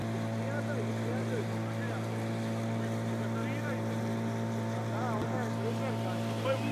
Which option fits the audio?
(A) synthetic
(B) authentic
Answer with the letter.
B